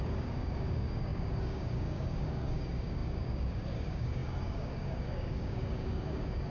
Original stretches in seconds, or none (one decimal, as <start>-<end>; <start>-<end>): none